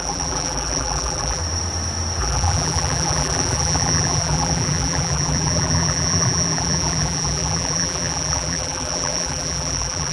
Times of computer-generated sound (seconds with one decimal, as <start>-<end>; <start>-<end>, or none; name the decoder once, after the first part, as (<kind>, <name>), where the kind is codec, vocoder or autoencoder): 0.0-1.4 (vocoder, BigVGAN v2); 2.2-10.1